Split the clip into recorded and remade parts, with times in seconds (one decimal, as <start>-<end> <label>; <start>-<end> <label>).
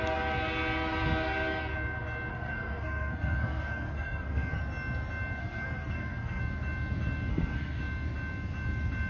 0.0-2.3 recorded; 2.3-4.6 remade; 4.6-5.4 recorded; 5.4-6.4 remade; 6.4-7.3 recorded; 7.3-7.8 remade; 7.8-9.1 recorded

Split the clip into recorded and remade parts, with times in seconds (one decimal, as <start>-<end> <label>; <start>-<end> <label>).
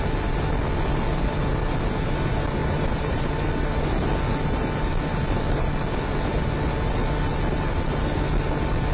0.0-2.6 recorded; 2.6-3.3 remade; 3.3-8.9 recorded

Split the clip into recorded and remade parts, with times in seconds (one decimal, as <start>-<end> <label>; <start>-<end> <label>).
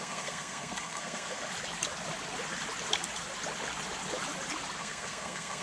0.0-1.5 remade; 1.5-4.8 recorded; 4.8-5.6 remade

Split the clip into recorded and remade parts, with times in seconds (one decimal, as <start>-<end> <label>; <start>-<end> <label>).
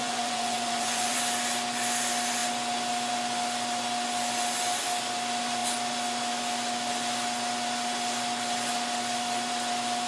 0.0-1.2 remade; 1.2-10.1 recorded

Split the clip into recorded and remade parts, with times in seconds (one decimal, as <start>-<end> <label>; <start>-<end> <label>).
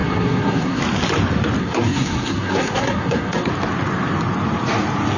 0.0-0.8 remade; 0.8-1.6 recorded; 1.6-3.5 remade; 3.5-5.2 recorded